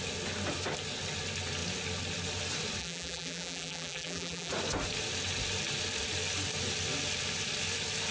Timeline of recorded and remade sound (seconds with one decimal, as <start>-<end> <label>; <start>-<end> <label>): 0.0-2.8 recorded; 2.8-4.5 remade; 4.5-8.1 recorded

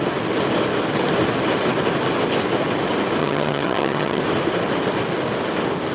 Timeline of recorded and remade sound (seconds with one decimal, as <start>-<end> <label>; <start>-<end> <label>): 0.0-3.2 recorded; 3.2-4.2 remade; 4.2-5.9 recorded